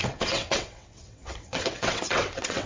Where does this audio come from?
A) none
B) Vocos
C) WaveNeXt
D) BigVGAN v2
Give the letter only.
C